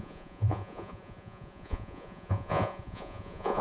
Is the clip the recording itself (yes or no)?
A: no